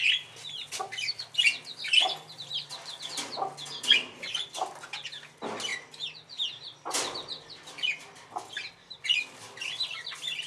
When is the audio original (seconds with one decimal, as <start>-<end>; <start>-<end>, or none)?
0.0-10.5